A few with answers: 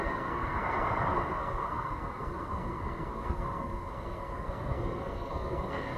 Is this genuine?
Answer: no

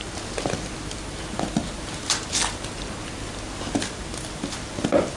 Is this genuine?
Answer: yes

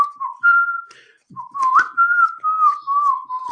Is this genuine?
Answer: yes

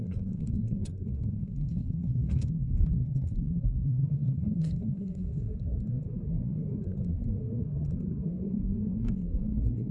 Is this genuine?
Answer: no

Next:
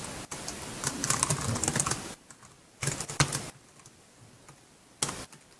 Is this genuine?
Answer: yes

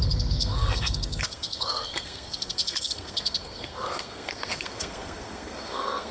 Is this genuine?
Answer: no